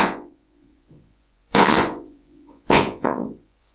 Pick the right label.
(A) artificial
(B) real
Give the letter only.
A